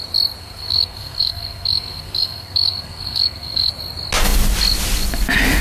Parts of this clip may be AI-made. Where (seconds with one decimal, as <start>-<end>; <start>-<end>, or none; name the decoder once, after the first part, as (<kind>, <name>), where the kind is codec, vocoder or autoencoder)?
0.4-3.7 (codec, SNAC)